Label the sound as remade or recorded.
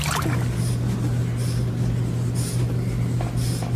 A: recorded